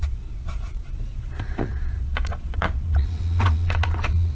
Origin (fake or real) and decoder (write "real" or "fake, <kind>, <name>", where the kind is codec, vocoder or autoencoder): fake, vocoder, Vocos